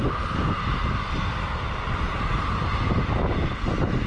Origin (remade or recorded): recorded